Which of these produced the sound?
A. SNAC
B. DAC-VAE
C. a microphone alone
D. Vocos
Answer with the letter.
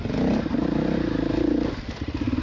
C